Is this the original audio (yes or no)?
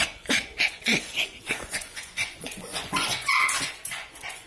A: no